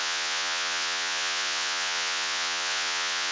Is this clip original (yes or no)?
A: no